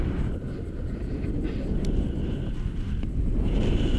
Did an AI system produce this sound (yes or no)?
no